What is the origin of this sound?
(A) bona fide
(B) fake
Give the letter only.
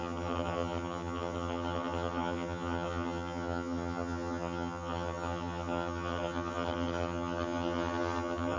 B